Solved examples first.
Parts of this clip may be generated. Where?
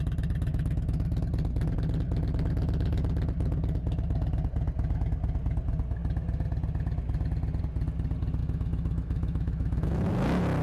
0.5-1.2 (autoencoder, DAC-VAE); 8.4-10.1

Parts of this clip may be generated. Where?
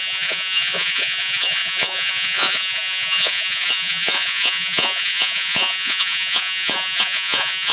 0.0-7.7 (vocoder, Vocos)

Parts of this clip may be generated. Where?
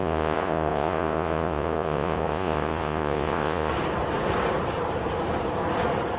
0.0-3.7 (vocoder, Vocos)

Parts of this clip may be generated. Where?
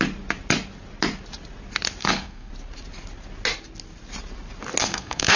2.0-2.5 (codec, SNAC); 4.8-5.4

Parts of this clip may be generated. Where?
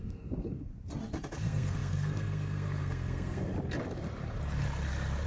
0.0-0.7 (codec, SNAC); 1.4-3.5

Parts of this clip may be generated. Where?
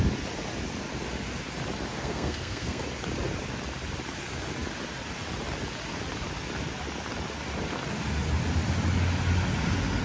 1.9-2.8 (codec, SNAC)